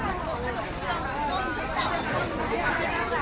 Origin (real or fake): fake